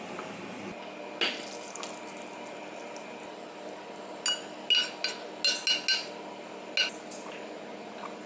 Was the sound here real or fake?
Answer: real